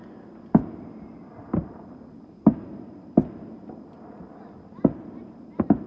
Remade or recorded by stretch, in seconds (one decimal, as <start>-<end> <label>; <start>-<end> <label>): 0.0-5.9 recorded